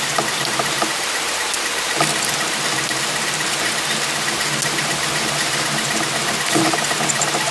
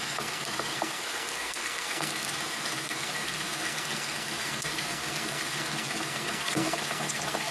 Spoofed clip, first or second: second